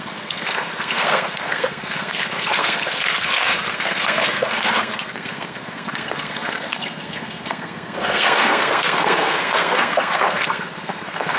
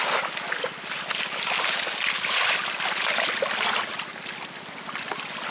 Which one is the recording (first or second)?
second